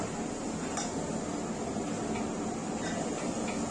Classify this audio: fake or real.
real